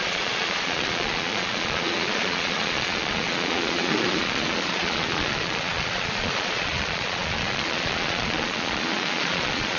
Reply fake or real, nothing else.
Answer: fake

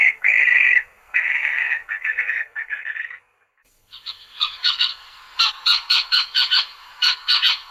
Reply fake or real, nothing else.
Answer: fake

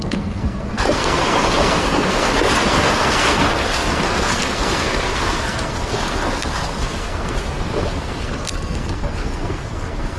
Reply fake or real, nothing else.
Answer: fake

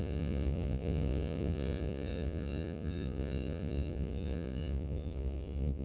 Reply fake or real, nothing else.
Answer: fake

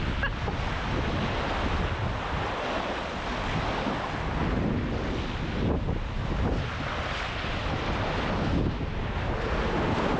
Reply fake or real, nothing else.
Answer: real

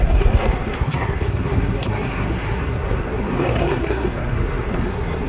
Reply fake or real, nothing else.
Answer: fake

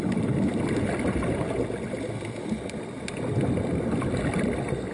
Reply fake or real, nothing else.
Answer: real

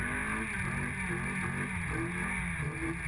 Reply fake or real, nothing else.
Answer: real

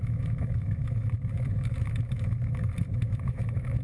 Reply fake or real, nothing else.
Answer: fake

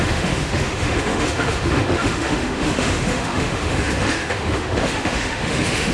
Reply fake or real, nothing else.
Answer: fake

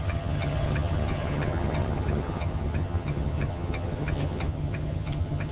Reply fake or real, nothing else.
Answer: fake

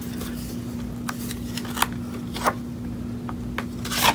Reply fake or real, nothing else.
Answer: real